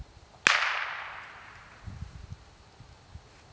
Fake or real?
real